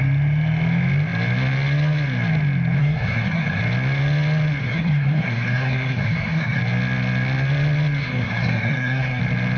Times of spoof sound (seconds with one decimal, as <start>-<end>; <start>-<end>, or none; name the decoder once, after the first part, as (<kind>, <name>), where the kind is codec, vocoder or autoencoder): 2.8-3.6 (codec, SNAC); 4.6-6.6; 8.0-9.2